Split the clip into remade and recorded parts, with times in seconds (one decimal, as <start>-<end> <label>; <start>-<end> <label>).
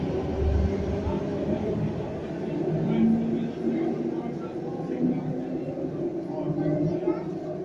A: 0.0-1.3 recorded; 1.3-2.4 remade; 2.4-7.6 recorded